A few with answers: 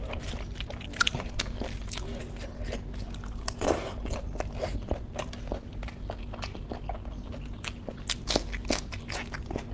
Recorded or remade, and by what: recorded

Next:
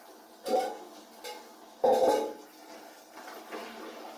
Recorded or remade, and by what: recorded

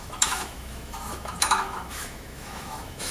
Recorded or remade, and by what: remade, autoencoder, DAC-VAE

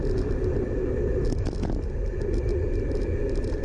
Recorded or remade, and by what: recorded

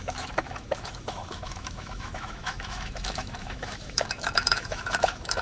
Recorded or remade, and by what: remade, autoencoder, DAC-VAE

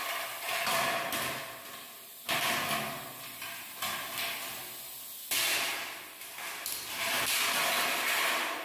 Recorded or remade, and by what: recorded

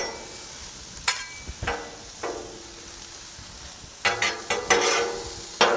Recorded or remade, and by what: recorded